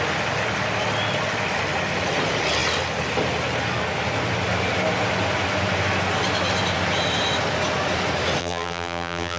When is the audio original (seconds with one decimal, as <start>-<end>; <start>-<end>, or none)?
0.0-8.4